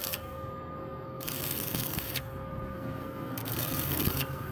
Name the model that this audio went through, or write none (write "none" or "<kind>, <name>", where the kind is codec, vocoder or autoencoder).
codec, SNAC